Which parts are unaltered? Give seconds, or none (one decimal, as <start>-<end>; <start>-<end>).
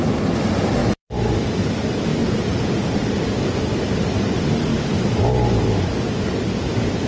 0.0-0.8; 1.3-7.1